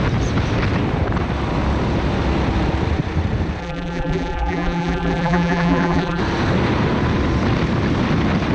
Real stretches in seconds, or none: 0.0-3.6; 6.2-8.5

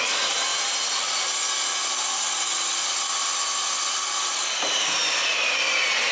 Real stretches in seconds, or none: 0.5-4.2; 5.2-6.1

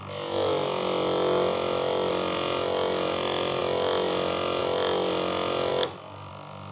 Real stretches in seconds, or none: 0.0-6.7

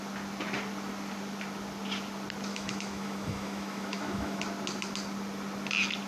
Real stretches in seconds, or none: 0.0-2.5; 4.4-6.1

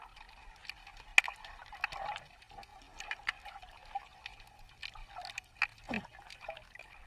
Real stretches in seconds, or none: 0.0-2.7; 3.5-7.1

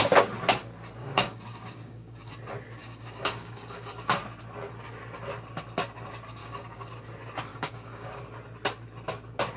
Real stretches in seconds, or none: 0.0-1.0; 2.3-2.8; 4.2-6.4; 6.9-7.5; 8.2-9.6

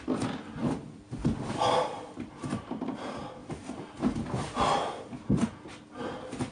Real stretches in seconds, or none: 0.0-6.5

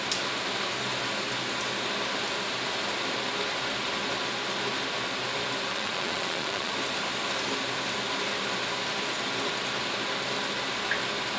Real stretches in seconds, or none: 0.0-5.7; 6.7-11.4